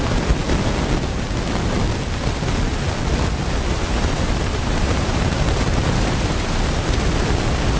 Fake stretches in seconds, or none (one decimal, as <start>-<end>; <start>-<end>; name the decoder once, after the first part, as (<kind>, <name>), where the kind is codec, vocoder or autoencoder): 3.7-6.8 (vocoder, BigVGAN v2)